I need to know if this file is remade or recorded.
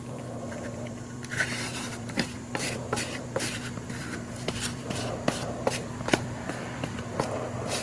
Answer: remade